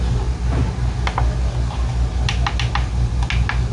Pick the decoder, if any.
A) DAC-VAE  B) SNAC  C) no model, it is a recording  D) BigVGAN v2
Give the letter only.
C